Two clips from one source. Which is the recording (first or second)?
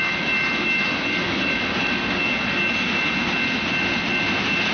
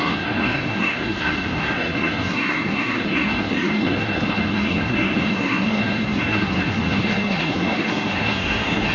first